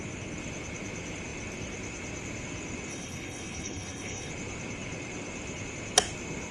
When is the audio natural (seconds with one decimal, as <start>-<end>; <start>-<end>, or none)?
0.0-2.9; 4.3-6.5